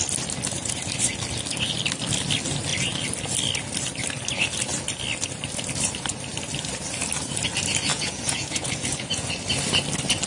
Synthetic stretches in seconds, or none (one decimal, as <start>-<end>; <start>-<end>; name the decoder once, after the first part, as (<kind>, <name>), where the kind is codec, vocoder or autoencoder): 7.9-9.3 (vocoder, Vocos)

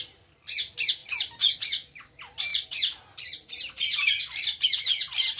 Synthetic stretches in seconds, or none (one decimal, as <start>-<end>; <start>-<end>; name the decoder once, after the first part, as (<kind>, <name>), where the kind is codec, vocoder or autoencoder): 2.5-3.6 (vocoder, BigVGAN v2)

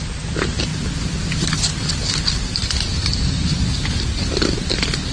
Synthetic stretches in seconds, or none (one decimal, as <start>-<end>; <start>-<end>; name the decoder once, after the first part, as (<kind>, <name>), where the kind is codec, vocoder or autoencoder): none

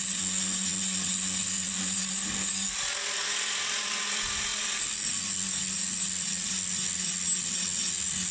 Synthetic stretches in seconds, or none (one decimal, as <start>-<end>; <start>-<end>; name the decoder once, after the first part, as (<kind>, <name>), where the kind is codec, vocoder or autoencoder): none

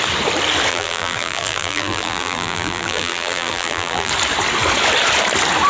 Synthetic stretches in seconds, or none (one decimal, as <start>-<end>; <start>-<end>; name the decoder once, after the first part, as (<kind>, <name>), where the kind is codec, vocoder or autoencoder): 0.7-4.1 (vocoder, BigVGAN v2)

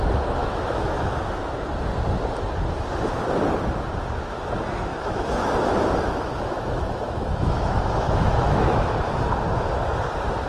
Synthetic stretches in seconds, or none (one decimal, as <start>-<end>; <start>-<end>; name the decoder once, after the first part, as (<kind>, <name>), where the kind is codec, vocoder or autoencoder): 0.4-1.5 (autoencoder, DAC-VAE); 4.9-8.9

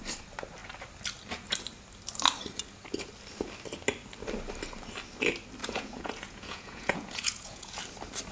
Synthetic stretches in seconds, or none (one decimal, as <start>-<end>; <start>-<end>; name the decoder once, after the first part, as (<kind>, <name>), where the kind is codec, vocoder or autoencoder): 5.6-7.8 (vocoder, Vocos)

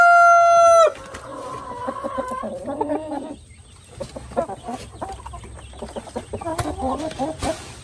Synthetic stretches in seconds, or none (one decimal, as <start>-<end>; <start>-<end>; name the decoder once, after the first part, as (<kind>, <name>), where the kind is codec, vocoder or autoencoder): 1.3-3.2 (vocoder, BigVGAN v2); 6.5-7.0